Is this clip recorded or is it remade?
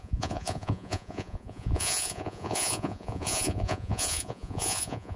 remade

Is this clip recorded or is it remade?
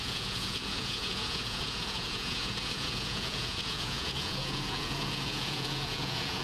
remade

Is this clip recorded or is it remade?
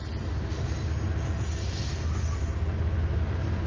recorded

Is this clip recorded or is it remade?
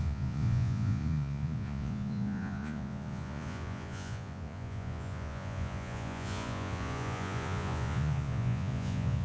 remade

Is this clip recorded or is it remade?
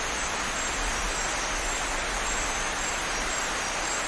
recorded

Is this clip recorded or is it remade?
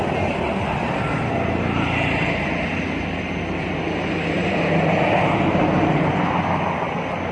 recorded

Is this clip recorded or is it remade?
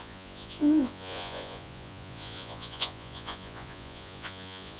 remade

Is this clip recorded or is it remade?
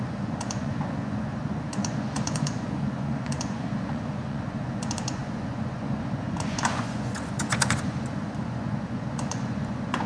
remade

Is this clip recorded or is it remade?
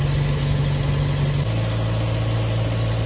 recorded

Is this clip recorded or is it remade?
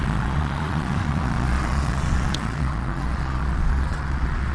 remade